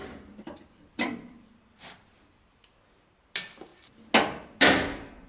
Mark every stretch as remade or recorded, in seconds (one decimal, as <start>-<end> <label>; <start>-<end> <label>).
0.0-3.2 remade; 3.2-5.3 recorded

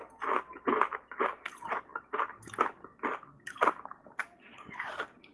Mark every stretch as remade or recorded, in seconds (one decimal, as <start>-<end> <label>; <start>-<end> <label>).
0.0-0.5 recorded; 0.5-1.9 remade; 1.9-5.3 recorded

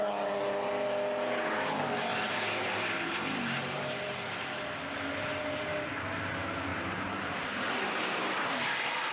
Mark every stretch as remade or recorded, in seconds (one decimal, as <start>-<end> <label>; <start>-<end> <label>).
0.0-2.1 recorded; 2.1-2.7 remade; 2.7-6.7 recorded; 6.7-8.2 remade; 8.2-9.1 recorded

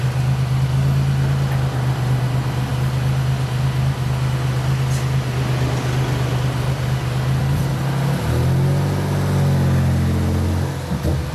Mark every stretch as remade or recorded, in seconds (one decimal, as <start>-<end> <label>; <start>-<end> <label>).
0.0-11.3 recorded

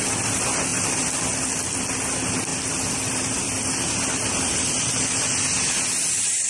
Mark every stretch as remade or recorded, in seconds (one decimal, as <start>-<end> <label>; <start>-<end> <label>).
0.0-0.7 recorded; 0.7-1.8 remade; 1.8-2.5 recorded; 2.5-4.9 remade; 4.9-6.5 recorded

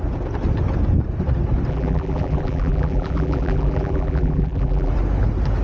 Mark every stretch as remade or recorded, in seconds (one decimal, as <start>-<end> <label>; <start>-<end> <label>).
0.0-1.7 recorded; 1.7-4.9 remade; 4.9-5.6 recorded